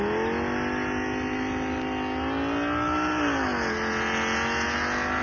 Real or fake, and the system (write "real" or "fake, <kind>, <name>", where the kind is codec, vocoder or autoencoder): real